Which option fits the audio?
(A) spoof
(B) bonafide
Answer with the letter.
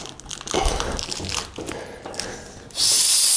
B